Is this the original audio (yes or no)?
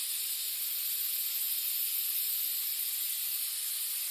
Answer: yes